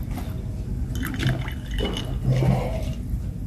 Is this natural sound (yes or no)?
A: yes